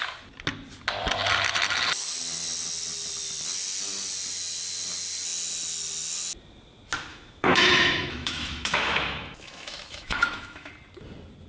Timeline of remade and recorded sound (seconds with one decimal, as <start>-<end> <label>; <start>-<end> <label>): 0.0-7.1 recorded; 7.1-10.7 remade; 10.7-11.5 recorded